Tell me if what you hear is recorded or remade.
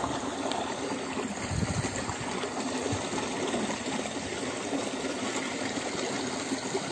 recorded